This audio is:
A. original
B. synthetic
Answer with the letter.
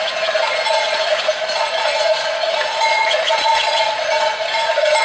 B